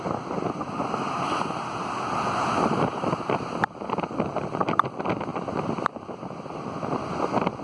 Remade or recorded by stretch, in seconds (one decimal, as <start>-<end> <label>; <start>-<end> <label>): 0.0-7.6 recorded